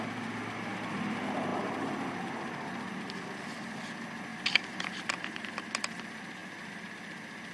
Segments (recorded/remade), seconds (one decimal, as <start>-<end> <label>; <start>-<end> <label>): 0.0-4.3 recorded; 4.3-5.7 remade; 5.7-7.5 recorded